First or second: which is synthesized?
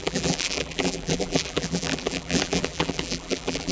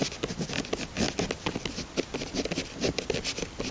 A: first